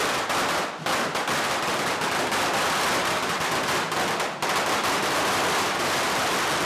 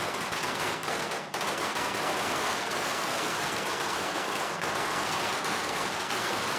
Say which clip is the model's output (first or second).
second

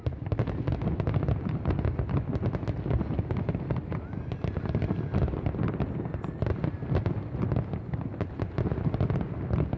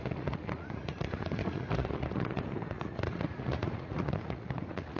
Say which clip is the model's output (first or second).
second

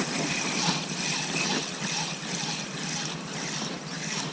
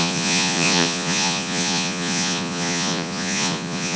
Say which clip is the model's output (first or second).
second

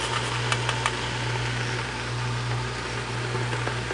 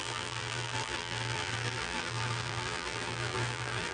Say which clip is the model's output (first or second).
second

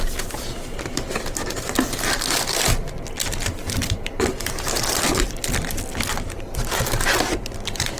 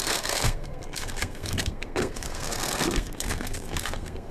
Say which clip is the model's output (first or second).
second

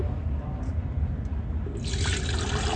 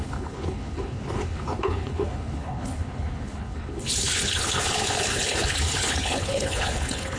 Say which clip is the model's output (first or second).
second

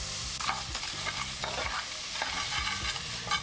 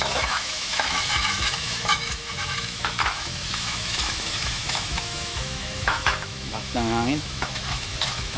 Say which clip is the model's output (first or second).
second